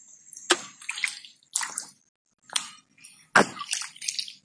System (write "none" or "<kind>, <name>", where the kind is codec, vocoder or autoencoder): none